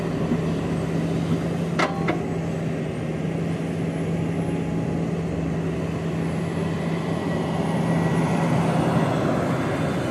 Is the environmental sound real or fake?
real